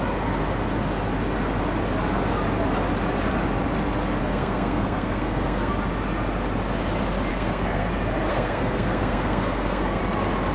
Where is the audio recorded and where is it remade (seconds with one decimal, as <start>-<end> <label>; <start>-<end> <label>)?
0.0-4.2 recorded; 4.2-5.7 remade; 5.7-7.3 recorded; 7.3-7.9 remade; 7.9-8.3 recorded; 8.3-10.0 remade; 10.0-10.5 recorded